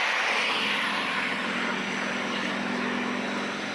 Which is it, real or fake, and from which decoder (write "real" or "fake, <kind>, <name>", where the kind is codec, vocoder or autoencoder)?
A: real